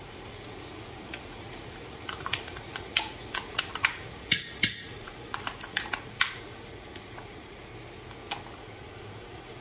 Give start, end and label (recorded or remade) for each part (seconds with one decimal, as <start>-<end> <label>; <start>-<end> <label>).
0.0-7.7 remade; 7.7-8.5 recorded; 8.5-9.6 remade